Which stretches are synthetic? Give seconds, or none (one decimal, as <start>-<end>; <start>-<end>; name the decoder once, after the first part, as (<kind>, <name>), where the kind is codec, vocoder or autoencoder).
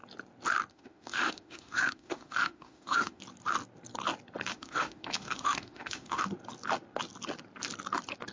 0.7-3.2 (autoencoder, DAC-VAE); 4.5-6.2